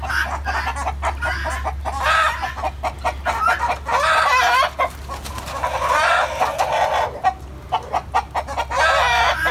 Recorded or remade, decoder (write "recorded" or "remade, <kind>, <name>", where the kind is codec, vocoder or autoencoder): recorded